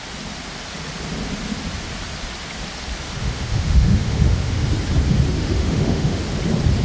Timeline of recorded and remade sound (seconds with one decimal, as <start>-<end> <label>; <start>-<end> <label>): 0.0-3.2 recorded; 3.2-4.7 remade; 4.7-5.4 recorded; 5.4-6.2 remade; 6.2-6.8 recorded